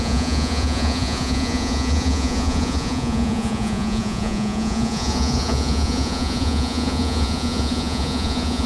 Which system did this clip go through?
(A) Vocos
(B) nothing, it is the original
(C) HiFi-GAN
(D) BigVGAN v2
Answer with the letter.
A